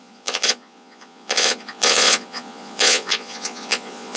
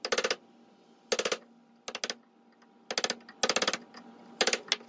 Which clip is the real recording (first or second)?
second